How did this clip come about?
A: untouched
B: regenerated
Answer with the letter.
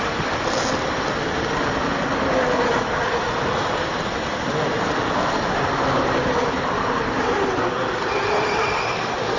A